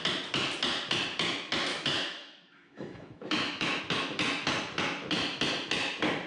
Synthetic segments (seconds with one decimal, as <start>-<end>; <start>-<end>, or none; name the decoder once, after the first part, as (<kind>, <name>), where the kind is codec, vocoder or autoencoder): 1.7-3.8 (autoencoder, DAC-VAE)